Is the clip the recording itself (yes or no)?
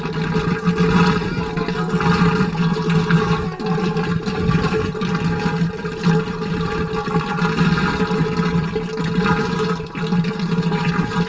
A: yes